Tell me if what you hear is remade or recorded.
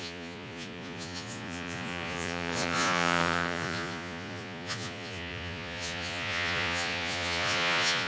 remade